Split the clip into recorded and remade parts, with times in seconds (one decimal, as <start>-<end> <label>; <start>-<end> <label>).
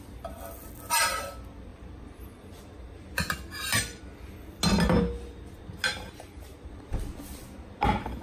0.0-1.7 recorded; 1.7-4.0 remade; 4.0-5.9 recorded; 5.9-6.7 remade; 6.7-8.2 recorded